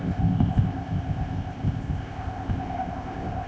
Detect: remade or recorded remade